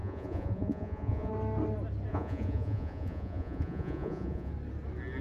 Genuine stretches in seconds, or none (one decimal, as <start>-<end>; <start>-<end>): 1.3-2.1; 4.5-5.2

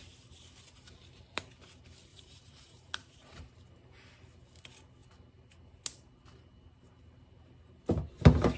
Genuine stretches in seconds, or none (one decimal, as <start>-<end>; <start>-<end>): 0.0-2.1; 3.4-8.6

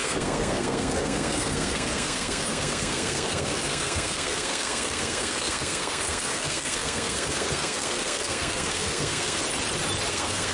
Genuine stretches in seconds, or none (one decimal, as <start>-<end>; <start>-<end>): 9.4-10.1